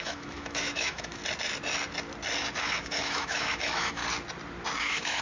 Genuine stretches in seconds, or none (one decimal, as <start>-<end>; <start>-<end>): 1.2-2.6; 4.0-4.8